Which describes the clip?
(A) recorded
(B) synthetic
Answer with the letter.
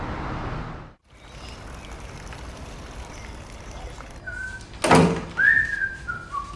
A